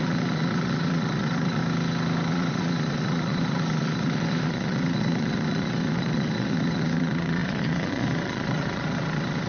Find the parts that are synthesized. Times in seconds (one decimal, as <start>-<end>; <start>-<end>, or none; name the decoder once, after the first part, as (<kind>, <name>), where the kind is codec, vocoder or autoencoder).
0.0-1.6 (vocoder, Vocos); 2.3-9.5